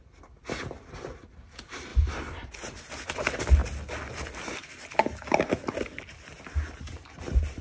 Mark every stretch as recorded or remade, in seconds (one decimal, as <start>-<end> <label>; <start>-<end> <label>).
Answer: 0.0-1.9 recorded; 1.9-3.1 remade; 3.1-7.6 recorded